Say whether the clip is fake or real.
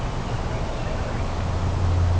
real